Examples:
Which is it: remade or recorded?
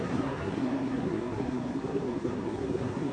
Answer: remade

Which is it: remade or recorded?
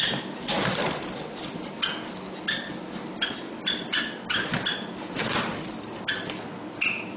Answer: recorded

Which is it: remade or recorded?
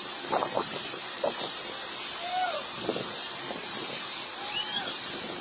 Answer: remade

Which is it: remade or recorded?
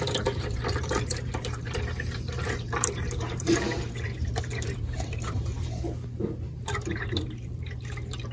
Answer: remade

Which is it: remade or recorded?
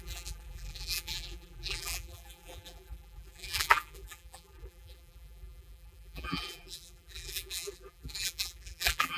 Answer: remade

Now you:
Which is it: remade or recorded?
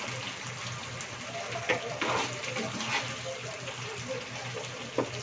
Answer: recorded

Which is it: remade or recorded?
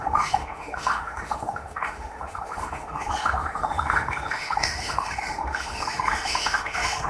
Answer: remade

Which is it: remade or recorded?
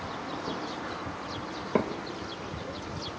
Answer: recorded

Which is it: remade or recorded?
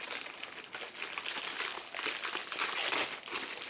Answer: recorded